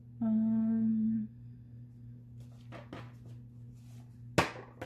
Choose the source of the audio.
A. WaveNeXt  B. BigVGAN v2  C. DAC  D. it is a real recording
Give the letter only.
D